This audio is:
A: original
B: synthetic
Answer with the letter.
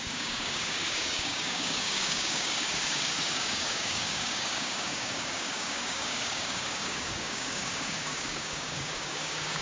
B